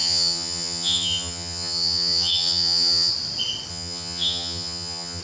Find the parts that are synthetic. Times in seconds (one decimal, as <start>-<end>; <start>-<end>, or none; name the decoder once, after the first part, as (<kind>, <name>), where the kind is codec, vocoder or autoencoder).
0.0-3.1 (vocoder, HiFi-GAN); 3.7-5.2